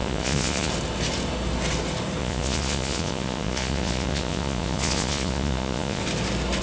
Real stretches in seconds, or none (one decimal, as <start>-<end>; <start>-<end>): 0.7-2.2; 6.0-6.6